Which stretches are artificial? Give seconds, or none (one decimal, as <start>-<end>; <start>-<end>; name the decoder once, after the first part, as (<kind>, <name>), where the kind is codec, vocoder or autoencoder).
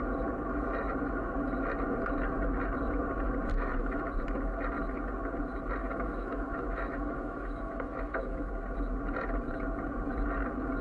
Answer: 3.5-4.0 (autoencoder, DAC-VAE); 5.8-8.5